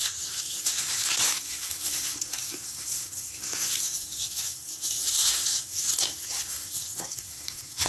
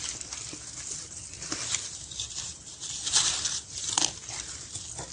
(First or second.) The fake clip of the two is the first